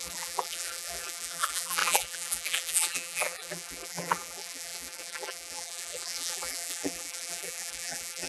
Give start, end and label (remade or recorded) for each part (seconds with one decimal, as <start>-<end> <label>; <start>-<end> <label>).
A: 0.0-8.3 remade